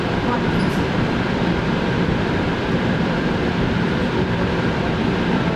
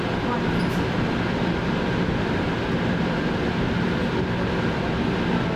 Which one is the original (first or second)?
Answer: second